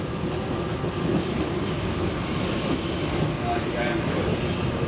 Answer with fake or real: real